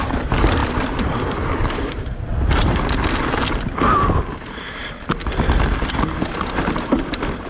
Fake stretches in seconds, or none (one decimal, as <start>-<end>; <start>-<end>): 0.0-2.3; 4.4-5.2; 6.3-7.5